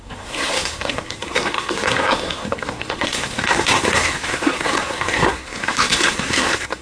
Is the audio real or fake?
fake